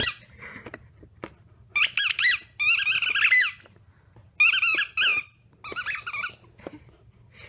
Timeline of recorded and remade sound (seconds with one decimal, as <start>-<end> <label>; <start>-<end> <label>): 0.0-7.5 recorded